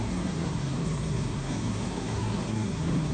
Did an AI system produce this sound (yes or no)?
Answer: yes